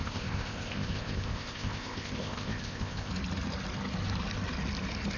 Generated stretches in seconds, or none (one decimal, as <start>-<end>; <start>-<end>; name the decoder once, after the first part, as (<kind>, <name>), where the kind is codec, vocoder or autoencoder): 0.0-3.1 (codec, ZipCodec)